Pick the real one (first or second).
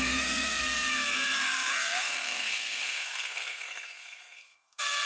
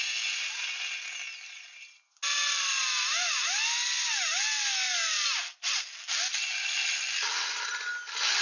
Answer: second